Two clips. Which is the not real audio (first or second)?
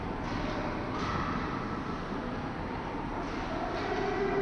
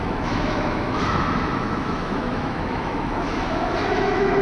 second